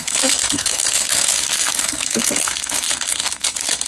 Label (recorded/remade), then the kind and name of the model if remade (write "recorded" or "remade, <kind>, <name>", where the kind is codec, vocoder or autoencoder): remade, codec, SNAC